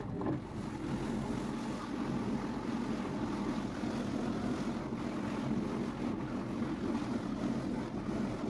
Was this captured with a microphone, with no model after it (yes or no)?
yes